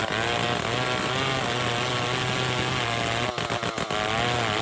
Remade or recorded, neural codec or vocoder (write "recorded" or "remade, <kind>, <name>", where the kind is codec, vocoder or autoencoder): recorded